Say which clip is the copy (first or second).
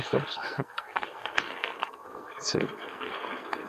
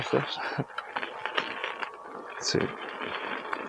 first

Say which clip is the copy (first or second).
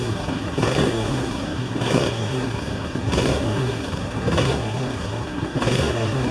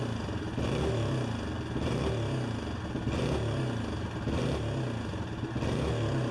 first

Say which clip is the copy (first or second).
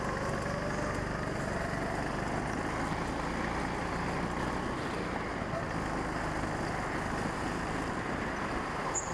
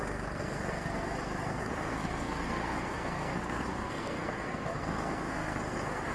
second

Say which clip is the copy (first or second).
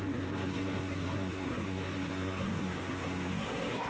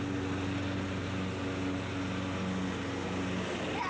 first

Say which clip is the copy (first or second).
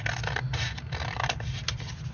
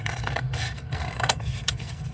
second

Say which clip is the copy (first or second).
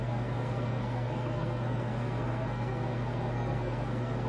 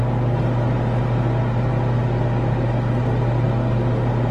first